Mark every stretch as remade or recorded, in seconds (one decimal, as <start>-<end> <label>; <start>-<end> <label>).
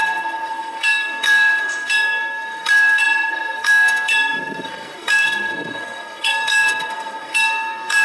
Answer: 0.0-8.0 remade